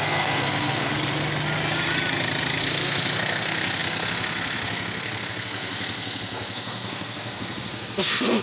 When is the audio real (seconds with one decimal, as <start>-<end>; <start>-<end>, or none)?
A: 0.9-2.6